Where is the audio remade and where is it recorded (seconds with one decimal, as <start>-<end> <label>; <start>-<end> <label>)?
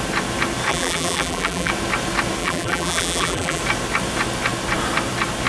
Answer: 0.0-0.7 recorded; 0.7-1.7 remade; 1.7-2.4 recorded; 2.4-3.6 remade; 3.6-5.5 recorded